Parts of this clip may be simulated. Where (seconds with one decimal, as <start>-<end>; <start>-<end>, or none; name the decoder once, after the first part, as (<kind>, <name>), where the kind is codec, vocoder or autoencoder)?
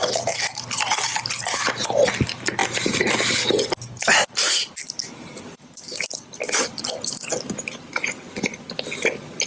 none